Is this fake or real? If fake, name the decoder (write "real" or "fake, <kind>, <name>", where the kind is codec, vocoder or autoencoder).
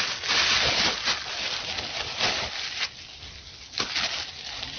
real